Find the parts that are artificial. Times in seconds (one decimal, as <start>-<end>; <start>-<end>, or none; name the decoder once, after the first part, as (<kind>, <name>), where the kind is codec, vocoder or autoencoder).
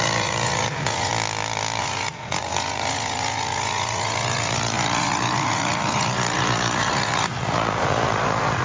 0.0-1.1 (vocoder, Vocos); 1.8-8.6